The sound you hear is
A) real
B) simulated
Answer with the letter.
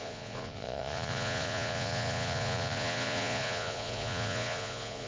B